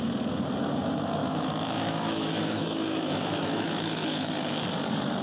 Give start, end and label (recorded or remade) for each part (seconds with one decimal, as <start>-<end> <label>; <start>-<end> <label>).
0.0-1.2 recorded; 1.2-4.3 remade; 4.3-5.2 recorded